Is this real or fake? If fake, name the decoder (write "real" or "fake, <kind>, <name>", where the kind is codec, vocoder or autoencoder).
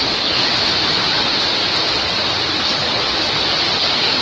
real